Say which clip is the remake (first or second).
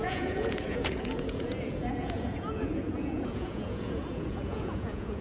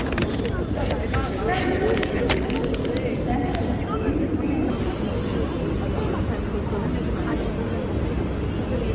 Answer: first